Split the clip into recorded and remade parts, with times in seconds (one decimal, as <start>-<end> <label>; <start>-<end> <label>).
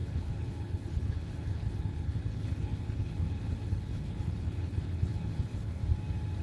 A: 0.0-5.8 remade; 5.8-6.4 recorded